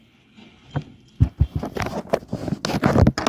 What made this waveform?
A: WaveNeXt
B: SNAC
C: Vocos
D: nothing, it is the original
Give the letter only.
D